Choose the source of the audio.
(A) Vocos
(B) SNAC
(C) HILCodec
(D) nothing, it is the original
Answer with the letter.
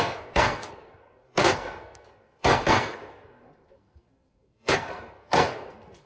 B